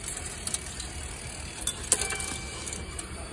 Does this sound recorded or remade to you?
recorded